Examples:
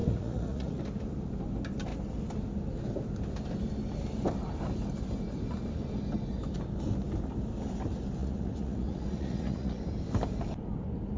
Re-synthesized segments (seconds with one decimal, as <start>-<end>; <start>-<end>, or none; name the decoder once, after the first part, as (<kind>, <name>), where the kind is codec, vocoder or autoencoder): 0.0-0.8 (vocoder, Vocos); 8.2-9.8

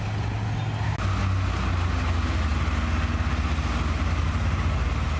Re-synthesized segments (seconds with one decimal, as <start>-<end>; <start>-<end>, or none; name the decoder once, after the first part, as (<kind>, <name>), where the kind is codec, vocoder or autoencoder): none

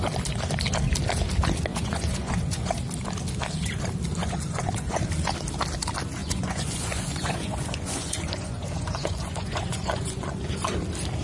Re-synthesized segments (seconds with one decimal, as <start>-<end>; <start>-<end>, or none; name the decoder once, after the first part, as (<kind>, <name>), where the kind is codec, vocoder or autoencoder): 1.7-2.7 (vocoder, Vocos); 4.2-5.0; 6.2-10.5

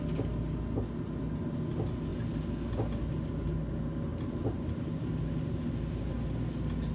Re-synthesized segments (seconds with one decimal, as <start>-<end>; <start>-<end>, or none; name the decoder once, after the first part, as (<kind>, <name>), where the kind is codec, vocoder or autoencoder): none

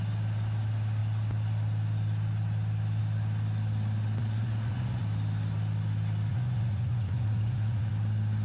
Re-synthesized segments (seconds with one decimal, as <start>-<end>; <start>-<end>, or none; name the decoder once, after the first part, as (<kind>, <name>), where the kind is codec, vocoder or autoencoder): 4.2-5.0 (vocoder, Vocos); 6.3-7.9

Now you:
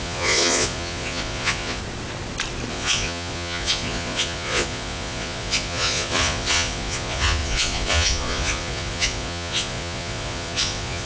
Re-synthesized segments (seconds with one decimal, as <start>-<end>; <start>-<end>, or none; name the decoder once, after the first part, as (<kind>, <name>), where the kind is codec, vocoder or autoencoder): 0.0-1.8 (vocoder, Vocos); 2.7-11.1

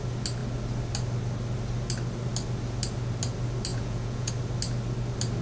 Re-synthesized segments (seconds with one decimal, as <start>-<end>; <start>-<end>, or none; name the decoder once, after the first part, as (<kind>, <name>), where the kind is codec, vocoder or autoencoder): 3.7-4.3 (vocoder, Vocos)